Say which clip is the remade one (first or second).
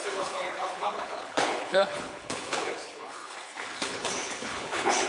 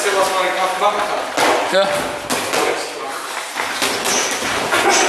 first